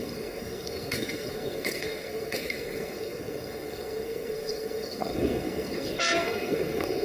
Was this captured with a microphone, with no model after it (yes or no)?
no